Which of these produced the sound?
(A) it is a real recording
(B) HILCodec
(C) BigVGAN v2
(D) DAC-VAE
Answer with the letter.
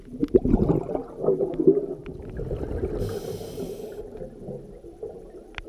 A